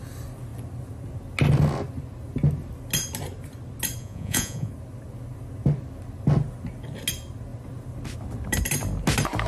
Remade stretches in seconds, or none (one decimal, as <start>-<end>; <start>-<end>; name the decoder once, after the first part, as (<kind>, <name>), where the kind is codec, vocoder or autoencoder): 4.0-4.7 (vocoder, Vocos)